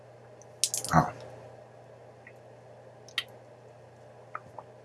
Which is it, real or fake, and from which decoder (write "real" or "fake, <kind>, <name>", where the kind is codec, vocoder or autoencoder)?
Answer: real